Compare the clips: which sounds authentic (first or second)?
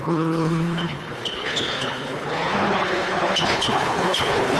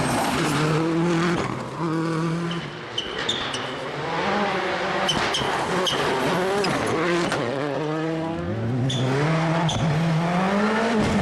second